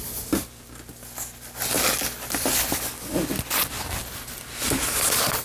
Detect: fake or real real